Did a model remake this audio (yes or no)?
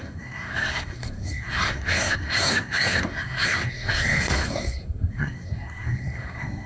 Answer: yes